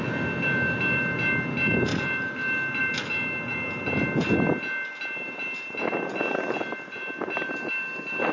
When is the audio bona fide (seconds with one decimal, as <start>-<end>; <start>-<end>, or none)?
0.0-8.3